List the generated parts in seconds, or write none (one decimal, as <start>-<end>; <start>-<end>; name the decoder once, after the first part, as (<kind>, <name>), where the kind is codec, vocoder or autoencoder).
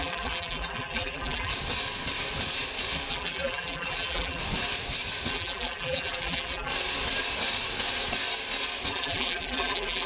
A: 0.0-1.5 (vocoder, BigVGAN v2); 3.1-4.4; 5.3-6.7; 8.9-10.1